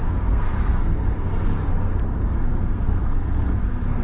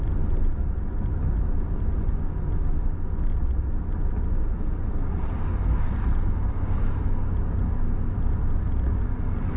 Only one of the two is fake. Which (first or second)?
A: first